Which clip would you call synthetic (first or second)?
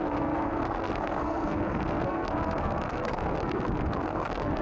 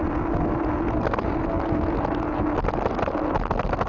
first